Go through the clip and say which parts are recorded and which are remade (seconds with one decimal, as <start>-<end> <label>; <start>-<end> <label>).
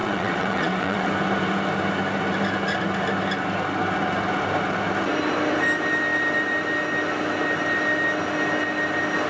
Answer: 0.0-1.1 remade; 1.1-9.3 recorded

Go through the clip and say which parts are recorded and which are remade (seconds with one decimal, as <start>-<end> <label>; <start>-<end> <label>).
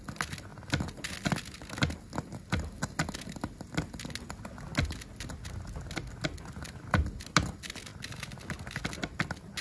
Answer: 0.0-9.6 recorded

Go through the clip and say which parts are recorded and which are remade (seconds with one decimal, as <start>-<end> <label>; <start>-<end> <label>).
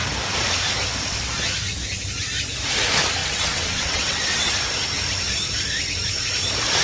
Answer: 0.0-3.2 recorded; 3.2-4.5 remade; 4.5-6.8 recorded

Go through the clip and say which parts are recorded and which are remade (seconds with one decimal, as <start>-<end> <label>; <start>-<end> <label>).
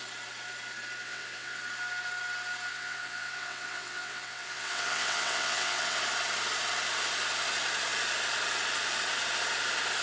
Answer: 0.0-1.0 recorded; 1.0-1.6 remade; 1.6-2.7 recorded; 2.7-6.0 remade; 6.0-10.0 recorded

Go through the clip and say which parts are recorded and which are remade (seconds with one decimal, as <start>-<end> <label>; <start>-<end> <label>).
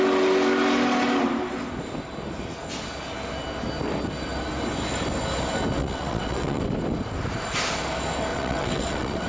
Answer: 0.0-5.8 recorded; 5.8-6.6 remade; 6.6-8.3 recorded; 8.3-9.3 remade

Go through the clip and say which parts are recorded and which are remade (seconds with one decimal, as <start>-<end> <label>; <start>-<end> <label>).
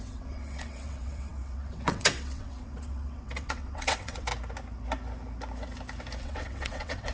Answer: 0.0-4.3 remade; 4.3-6.2 recorded; 6.2-7.1 remade